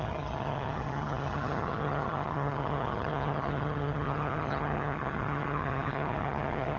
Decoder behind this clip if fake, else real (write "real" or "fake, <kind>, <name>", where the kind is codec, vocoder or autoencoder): fake, vocoder, HiFi-GAN